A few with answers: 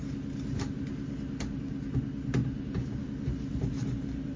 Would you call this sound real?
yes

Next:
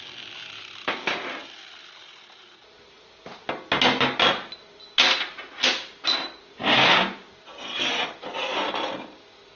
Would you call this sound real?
yes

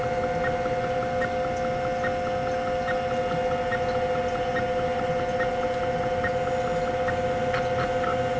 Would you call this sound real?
yes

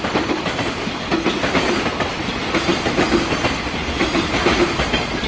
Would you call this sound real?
yes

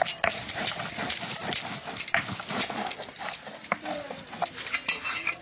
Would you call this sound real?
yes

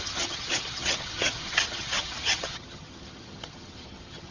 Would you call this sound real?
no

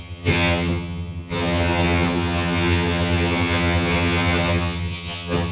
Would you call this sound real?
no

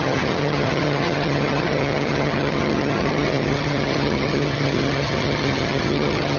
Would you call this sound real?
no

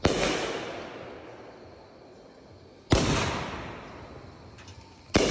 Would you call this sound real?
yes